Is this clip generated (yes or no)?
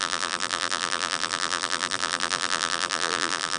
yes